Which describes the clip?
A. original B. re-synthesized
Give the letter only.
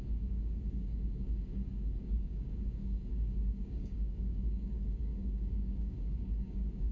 B